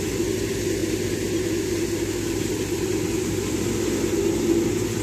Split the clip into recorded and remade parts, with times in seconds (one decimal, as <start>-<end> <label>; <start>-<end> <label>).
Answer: 0.0-5.0 recorded